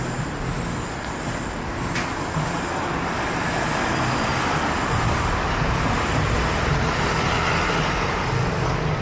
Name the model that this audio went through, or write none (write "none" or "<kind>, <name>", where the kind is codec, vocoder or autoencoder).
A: none